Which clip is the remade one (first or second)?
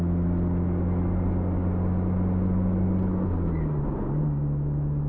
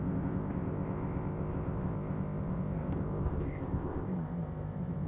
second